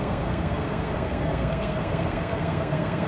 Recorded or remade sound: remade